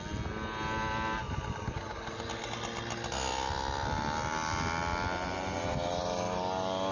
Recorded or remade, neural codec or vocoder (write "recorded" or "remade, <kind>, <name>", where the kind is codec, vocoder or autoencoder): recorded